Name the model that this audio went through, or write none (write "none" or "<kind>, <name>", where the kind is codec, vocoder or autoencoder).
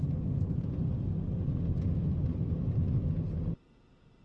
none